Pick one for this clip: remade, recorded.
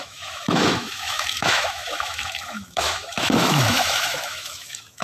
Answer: remade